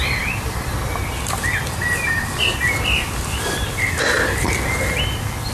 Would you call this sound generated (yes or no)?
no